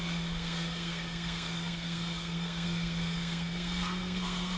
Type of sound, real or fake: fake